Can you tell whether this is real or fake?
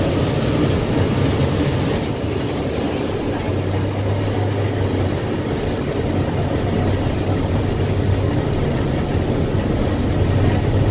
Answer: real